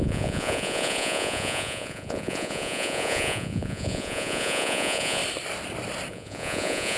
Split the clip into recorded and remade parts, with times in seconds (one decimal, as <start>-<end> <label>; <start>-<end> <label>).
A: 0.0-5.2 remade; 5.2-6.1 recorded; 6.1-7.0 remade